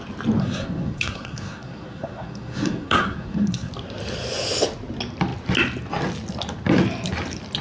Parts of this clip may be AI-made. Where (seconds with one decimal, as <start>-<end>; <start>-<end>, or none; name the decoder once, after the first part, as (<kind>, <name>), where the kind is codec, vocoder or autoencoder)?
0.4-3.7 (codec, SNAC)